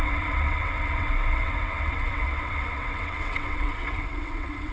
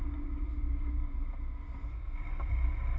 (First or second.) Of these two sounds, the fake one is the first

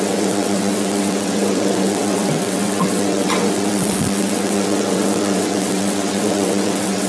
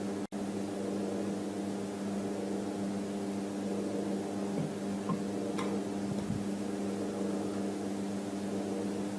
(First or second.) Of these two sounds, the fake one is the first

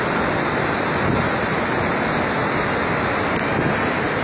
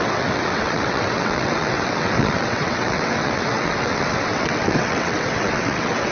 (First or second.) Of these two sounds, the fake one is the second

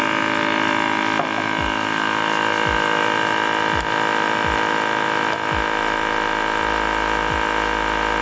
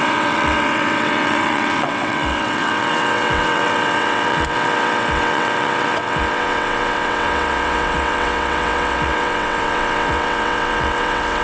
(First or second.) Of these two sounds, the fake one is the second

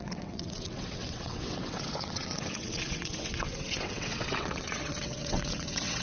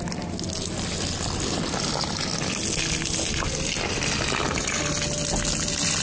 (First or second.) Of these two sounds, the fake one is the first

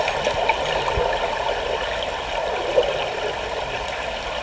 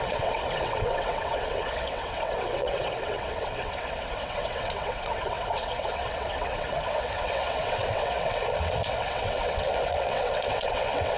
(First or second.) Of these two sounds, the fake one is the second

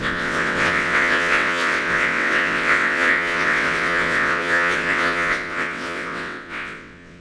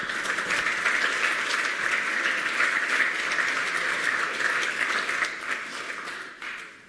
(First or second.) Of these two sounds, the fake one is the first